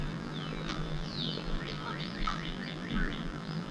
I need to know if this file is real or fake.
fake